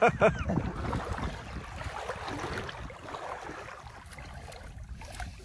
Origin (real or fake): real